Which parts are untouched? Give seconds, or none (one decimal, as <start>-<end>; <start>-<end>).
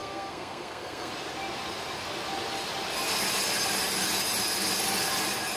1.1-5.6